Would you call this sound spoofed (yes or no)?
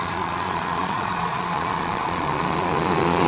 yes